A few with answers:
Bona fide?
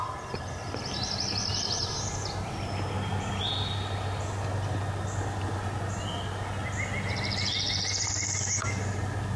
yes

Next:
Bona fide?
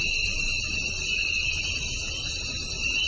yes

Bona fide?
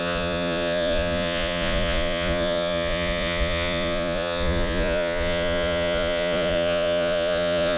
no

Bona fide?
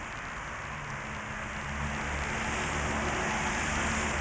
yes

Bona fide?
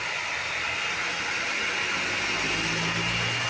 yes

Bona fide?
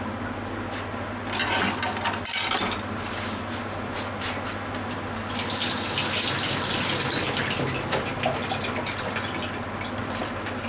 yes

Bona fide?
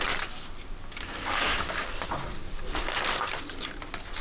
yes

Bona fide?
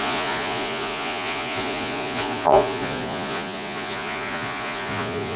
no